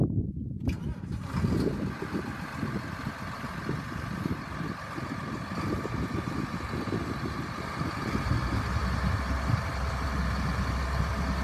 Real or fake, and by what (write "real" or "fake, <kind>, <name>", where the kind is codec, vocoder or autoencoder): real